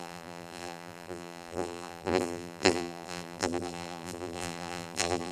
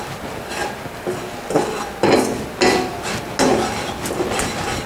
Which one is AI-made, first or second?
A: first